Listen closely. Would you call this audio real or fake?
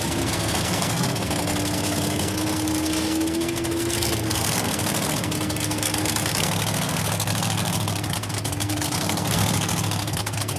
fake